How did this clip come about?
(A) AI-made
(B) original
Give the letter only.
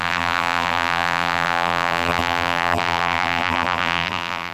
A